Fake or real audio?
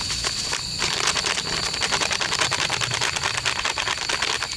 real